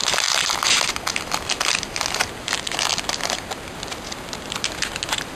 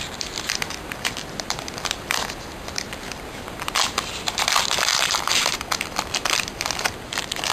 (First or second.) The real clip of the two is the first